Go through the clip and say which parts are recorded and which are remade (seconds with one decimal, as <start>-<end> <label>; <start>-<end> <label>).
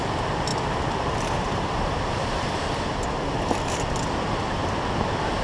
0.0-0.5 recorded; 0.5-3.7 remade; 3.7-5.4 recorded